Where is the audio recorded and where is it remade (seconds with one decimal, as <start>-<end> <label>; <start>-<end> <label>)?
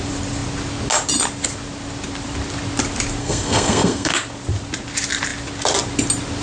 0.0-3.2 recorded; 3.2-4.1 remade; 4.1-6.4 recorded